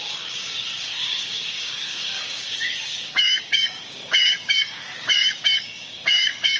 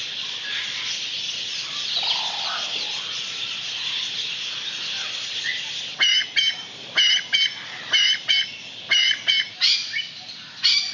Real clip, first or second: second